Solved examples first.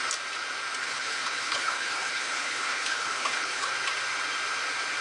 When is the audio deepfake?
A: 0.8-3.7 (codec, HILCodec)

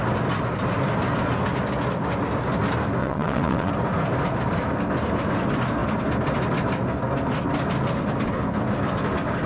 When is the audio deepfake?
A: 3.0-3.7 (vocoder, WaveNeXt)

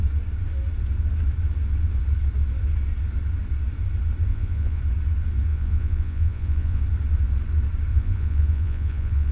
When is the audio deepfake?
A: 4.3-4.8 (vocoder, Vocos); 5.5-6.8; 7.9-9.3